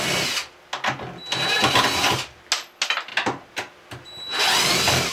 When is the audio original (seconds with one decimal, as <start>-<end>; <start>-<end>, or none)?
0.0-5.1